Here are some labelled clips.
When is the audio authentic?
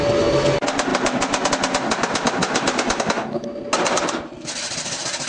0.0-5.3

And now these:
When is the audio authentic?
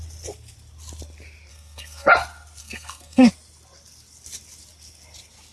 0.0-1.5; 2.1-2.6; 3.3-5.5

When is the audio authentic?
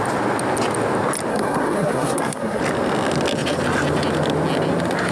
0.0-1.3; 2.6-5.1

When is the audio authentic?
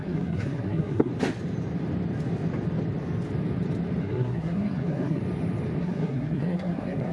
1.1-4.0; 5.2-5.8